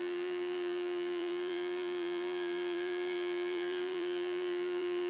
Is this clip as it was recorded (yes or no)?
no